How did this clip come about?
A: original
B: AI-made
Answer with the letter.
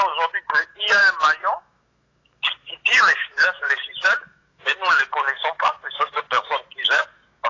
B